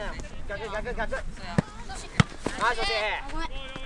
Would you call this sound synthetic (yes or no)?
no